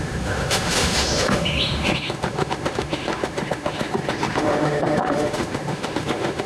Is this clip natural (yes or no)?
no